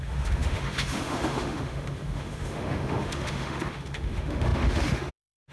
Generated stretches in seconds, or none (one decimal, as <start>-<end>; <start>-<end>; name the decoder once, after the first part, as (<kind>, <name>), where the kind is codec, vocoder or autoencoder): 0.0-5.5 (autoencoder, DAC-VAE)